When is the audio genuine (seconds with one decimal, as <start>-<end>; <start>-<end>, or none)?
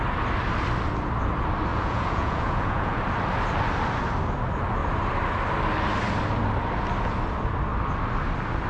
0.0-1.7; 2.9-8.7